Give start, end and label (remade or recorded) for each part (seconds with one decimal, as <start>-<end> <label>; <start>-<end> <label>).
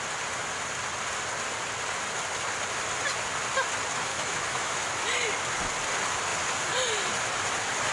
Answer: 0.0-4.1 recorded; 4.1-4.9 remade; 4.9-7.9 recorded